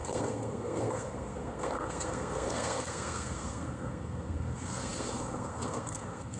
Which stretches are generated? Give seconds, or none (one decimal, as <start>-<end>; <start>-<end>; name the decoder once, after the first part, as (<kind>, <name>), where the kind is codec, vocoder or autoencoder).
0.0-6.4 (codec, SNAC)